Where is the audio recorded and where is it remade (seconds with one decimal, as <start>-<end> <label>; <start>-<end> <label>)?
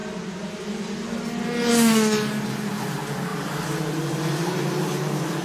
0.0-3.3 recorded; 3.3-4.1 remade; 4.1-5.4 recorded